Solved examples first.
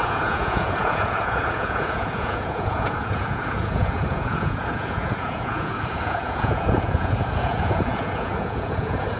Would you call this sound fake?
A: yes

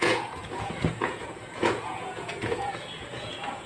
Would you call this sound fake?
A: yes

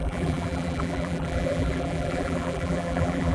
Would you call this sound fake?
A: yes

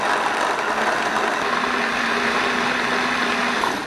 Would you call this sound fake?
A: no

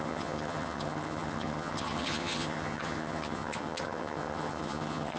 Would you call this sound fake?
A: yes